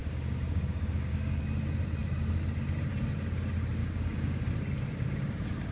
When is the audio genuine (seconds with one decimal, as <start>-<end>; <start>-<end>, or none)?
1.4-3.8; 4.5-5.7